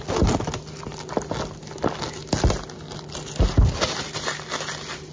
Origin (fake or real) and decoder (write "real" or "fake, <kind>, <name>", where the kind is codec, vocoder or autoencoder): real